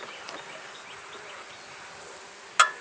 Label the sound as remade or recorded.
recorded